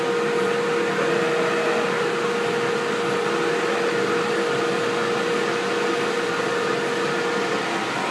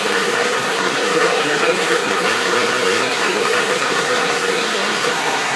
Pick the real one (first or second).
first